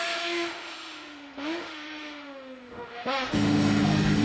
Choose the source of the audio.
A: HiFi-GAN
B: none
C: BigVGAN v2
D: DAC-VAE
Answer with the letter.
D